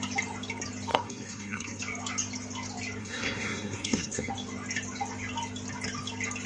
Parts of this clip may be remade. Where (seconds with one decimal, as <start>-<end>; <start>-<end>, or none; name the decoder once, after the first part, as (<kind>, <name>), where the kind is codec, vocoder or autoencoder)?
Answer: 0.9-1.8 (codec, SNAC); 3.0-4.3